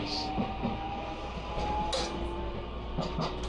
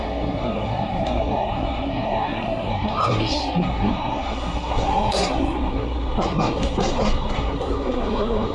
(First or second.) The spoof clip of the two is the second